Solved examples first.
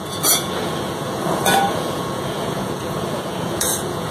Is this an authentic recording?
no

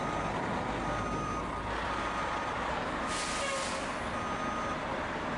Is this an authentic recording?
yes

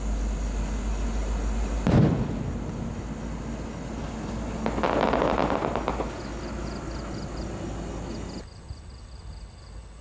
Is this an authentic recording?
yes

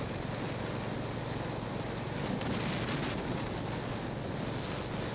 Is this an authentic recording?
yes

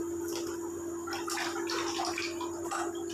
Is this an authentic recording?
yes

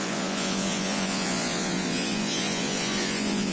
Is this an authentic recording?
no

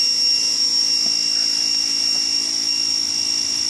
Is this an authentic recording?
yes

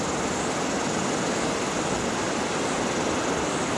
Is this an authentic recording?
yes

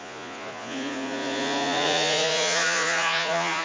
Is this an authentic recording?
no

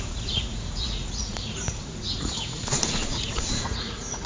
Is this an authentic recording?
no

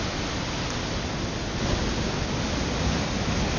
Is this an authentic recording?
yes